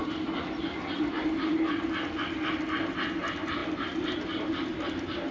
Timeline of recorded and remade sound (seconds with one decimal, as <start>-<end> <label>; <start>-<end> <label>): 0.0-5.3 recorded